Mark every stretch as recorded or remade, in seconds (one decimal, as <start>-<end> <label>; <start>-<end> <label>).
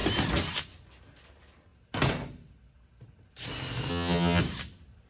0.0-3.9 recorded; 3.9-4.4 remade; 4.4-5.1 recorded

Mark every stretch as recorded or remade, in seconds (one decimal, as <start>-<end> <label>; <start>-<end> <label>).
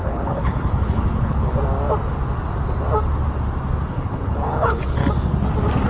0.0-1.5 remade; 1.5-3.9 recorded; 3.9-5.0 remade; 5.0-5.9 recorded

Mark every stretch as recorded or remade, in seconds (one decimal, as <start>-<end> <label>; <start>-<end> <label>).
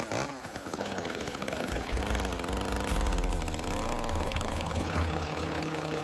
0.0-0.4 recorded; 0.4-2.0 remade; 2.0-4.2 recorded; 4.2-6.0 remade